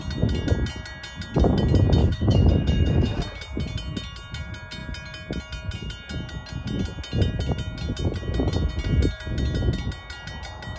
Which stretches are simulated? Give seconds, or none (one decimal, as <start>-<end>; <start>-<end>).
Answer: 2.0-3.2